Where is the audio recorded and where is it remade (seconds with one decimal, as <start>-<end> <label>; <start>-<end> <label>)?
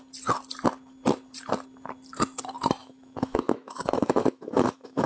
0.0-2.8 recorded; 2.8-5.1 remade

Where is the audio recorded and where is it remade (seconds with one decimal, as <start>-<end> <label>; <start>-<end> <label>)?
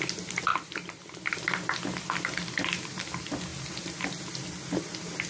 0.0-0.5 recorded; 0.5-1.3 remade; 1.3-5.3 recorded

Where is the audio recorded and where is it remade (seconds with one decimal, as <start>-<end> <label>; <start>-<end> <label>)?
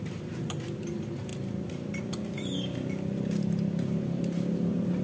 0.0-5.0 recorded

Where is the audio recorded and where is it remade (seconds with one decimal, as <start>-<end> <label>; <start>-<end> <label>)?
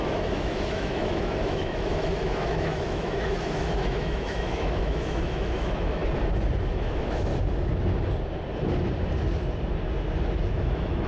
0.0-6.0 remade; 6.0-6.7 recorded; 6.7-7.3 remade; 7.3-10.5 recorded; 10.5-11.1 remade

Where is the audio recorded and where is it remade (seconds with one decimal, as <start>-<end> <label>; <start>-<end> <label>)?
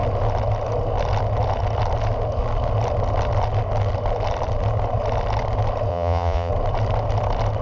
0.0-5.9 recorded; 5.9-6.5 remade; 6.5-7.6 recorded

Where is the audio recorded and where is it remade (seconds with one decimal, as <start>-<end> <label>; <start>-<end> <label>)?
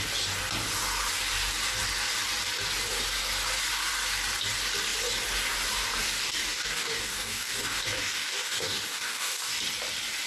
0.0-6.2 recorded; 6.2-9.6 remade; 9.6-10.3 recorded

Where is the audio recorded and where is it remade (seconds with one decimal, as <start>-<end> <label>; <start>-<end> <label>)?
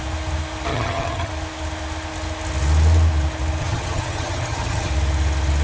0.0-0.7 recorded; 0.7-1.3 remade; 1.3-3.6 recorded; 3.6-4.9 remade; 4.9-5.6 recorded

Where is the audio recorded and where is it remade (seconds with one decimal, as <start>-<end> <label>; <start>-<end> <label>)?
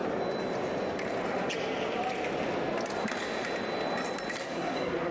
0.0-4.4 recorded; 4.4-5.1 remade